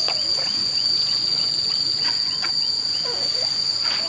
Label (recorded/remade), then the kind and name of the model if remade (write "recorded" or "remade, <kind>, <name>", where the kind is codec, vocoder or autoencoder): remade, vocoder, Vocos